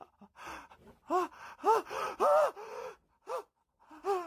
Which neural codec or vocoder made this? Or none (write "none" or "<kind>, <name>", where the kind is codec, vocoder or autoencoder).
none